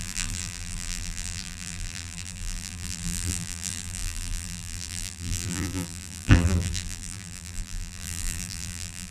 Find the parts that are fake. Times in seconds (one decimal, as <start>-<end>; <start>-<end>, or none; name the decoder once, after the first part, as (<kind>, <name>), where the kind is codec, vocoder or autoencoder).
0.0-9.1 (vocoder, BigVGAN v2)